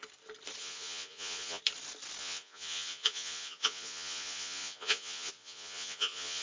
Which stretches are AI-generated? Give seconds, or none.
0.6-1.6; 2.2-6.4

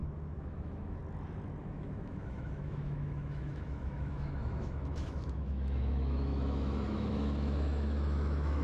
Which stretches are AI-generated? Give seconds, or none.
0.0-1.0; 1.6-8.6

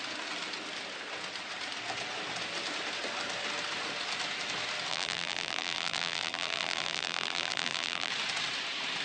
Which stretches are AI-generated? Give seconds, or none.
4.9-8.1

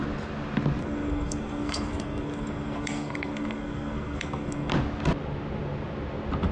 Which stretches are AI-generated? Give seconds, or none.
0.8-4.7

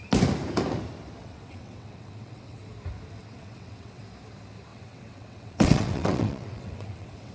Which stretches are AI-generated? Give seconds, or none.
1.2-2.6; 3.3-4.0; 4.7-7.3

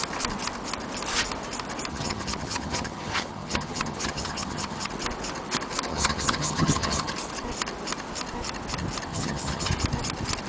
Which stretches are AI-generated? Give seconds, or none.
1.9-4.9; 5.9-7.1; 9.1-9.7

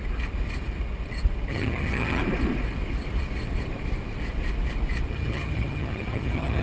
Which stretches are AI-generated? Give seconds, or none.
1.5-2.2; 5.1-6.6